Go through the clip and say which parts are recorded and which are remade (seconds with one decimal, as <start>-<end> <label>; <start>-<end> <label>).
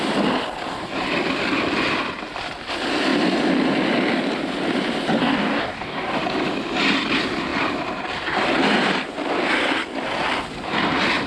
0.0-5.2 recorded; 5.2-6.2 remade; 6.2-11.3 recorded